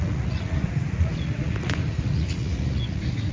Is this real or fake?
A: fake